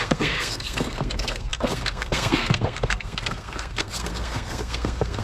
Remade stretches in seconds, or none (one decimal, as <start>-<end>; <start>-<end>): 0.0-5.2